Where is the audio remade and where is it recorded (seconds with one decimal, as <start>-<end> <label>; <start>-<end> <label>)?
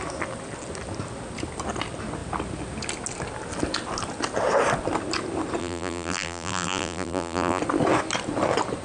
0.0-5.6 recorded; 5.6-7.6 remade; 7.6-8.8 recorded